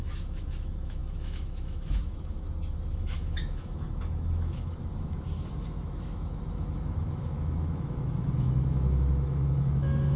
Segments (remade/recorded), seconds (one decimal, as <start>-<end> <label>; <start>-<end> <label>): 0.0-10.2 remade